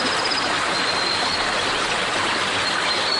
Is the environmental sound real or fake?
real